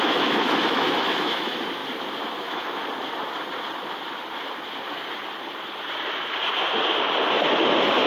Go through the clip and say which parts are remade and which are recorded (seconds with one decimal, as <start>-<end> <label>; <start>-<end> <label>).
0.0-1.8 remade; 1.8-2.4 recorded; 2.4-2.8 remade; 2.8-8.1 recorded